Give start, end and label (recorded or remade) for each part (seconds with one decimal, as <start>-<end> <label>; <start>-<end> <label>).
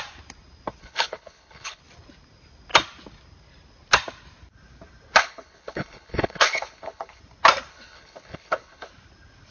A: 0.0-0.8 recorded; 0.8-1.8 remade; 1.8-5.2 recorded; 5.2-7.2 remade; 7.2-7.7 recorded; 7.7-8.9 remade; 8.9-9.5 recorded